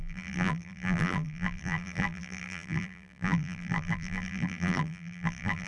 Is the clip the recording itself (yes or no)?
no